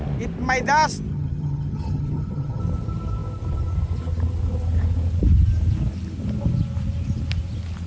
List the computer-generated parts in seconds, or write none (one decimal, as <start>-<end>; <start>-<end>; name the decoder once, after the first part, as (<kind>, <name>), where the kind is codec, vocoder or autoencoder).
1.1-2.6 (vocoder, HiFi-GAN)